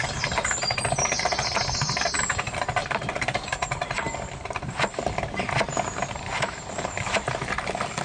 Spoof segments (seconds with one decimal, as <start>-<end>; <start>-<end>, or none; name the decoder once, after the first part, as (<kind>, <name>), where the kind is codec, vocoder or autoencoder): 2.8-7.5 (vocoder, BigVGAN v2)